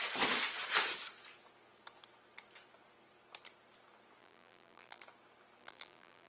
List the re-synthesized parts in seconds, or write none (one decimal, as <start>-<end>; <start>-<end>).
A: 4.2-5.0; 5.6-6.3